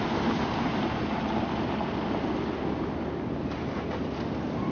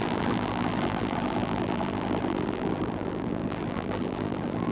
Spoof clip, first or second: second